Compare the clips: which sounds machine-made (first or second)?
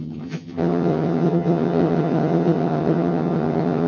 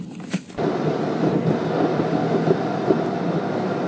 first